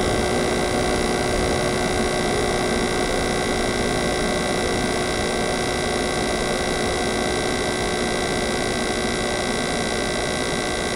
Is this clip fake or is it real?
real